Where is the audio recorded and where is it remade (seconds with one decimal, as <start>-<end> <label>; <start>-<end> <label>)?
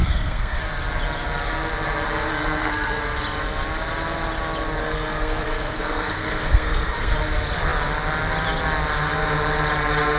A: 0.0-0.6 remade; 0.6-2.3 recorded; 2.3-3.0 remade; 3.0-4.8 recorded; 4.8-7.1 remade; 7.1-10.2 recorded